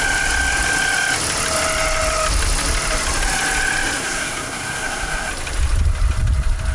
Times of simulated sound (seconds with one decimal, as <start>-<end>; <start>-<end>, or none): 4.0-5.3